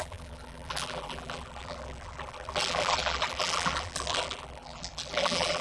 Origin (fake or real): fake